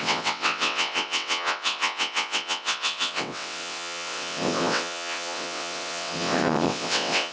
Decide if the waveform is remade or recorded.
remade